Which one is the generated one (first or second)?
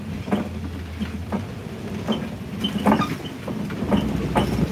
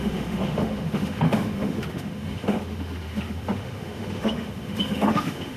second